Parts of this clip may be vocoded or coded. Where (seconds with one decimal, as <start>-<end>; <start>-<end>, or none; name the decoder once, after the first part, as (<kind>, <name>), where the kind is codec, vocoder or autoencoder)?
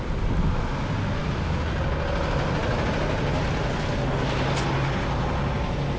none